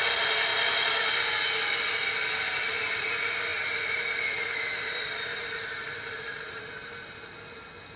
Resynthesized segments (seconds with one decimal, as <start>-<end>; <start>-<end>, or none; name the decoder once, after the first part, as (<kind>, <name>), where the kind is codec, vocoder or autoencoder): 0.5-1.1 (vocoder, BigVGAN v2); 3.5-6.6